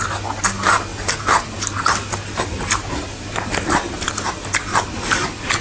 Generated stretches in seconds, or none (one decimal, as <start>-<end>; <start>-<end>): none

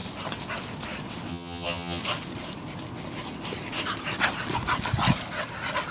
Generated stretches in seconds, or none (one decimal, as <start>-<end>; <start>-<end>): 1.3-2.0